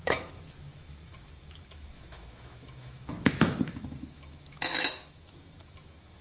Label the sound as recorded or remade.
remade